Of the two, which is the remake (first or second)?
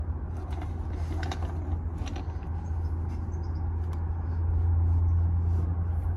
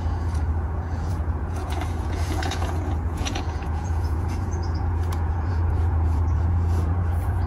second